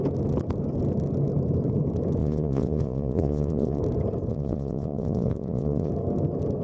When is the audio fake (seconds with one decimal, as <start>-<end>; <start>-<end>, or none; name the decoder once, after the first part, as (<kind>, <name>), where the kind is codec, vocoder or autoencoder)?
2.2-3.8 (vocoder, Vocos); 4.3-5.9